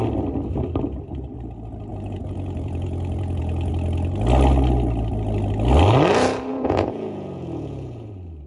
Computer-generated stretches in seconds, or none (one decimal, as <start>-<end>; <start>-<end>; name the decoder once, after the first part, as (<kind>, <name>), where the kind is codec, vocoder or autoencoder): 1.9-3.7 (vocoder, Vocos); 6.5-8.1